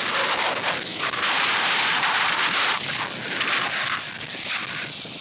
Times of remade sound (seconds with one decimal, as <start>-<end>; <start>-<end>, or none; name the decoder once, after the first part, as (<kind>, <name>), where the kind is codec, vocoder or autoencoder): 0.9-3.0 (vocoder, BigVGAN v2)